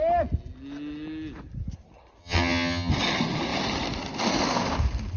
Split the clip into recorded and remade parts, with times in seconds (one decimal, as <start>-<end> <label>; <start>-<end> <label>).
0.0-2.2 recorded; 2.2-2.9 remade; 2.9-5.2 recorded